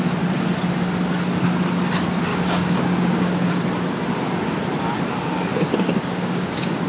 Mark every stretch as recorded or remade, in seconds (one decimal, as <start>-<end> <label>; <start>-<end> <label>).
0.0-2.3 recorded; 2.3-3.5 remade; 3.5-5.5 recorded; 5.5-6.9 remade